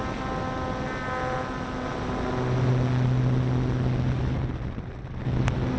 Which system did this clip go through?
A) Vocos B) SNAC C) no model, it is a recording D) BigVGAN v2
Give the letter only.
C